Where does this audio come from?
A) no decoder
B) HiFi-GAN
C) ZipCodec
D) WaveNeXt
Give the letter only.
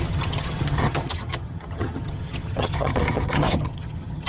B